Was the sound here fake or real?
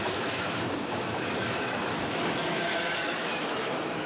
fake